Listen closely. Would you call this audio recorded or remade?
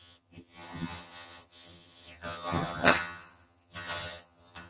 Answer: remade